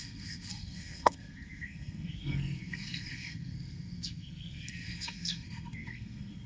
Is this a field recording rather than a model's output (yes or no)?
no